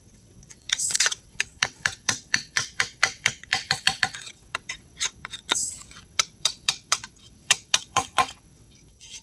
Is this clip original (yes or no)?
no